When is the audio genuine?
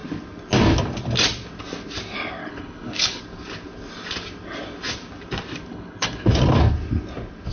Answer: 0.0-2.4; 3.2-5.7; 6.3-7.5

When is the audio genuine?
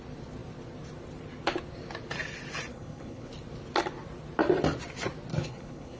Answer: 0.0-2.7; 3.3-5.3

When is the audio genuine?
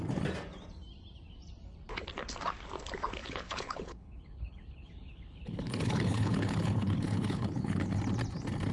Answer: 0.0-3.2; 8.0-8.7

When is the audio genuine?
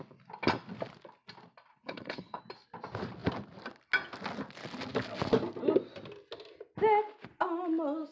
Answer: 0.0-1.7; 2.4-8.1